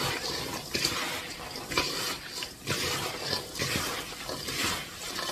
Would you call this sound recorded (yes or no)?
yes